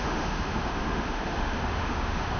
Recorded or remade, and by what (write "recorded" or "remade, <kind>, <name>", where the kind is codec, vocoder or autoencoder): remade, autoencoder, DAC-VAE